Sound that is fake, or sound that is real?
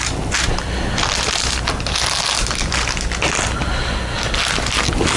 real